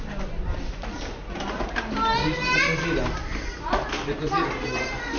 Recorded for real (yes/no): yes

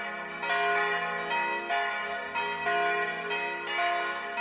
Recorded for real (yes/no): yes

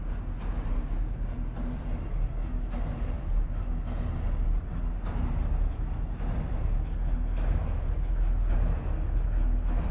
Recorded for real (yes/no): yes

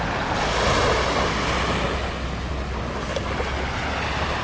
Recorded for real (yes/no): yes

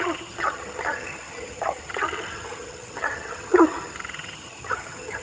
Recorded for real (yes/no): no